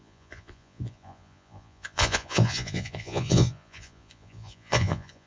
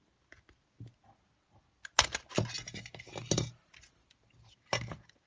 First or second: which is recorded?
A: second